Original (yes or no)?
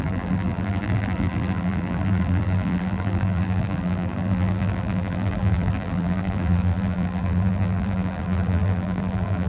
no